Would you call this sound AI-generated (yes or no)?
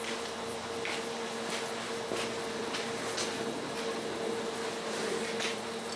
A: no